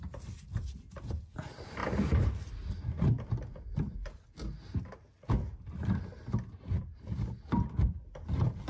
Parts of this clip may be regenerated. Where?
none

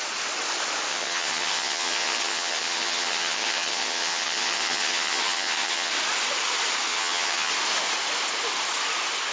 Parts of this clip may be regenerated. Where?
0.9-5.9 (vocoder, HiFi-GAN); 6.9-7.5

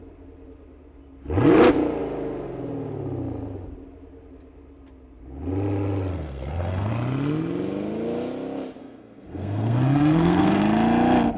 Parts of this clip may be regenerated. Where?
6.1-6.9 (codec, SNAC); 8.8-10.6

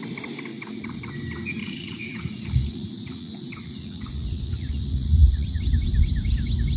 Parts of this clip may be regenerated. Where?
0.5-1.0 (vocoder, Vocos); 1.6-5.6

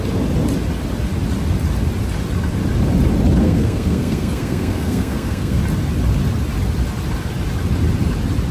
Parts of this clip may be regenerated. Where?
3.4-5.6 (codec, SNAC)

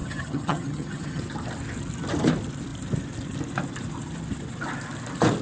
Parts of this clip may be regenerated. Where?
0.0-1.2 (vocoder, HiFi-GAN)